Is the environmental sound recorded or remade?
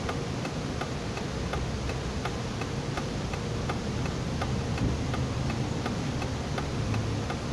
recorded